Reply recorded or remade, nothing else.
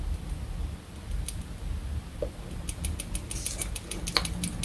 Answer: recorded